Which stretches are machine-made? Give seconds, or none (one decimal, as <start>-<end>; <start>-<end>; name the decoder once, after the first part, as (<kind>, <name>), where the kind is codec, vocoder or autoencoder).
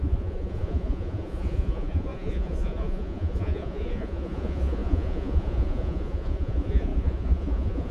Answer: 0.0-7.9 (vocoder, Vocos)